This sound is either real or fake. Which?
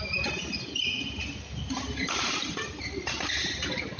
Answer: real